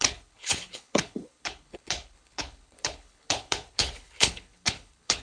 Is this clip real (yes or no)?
no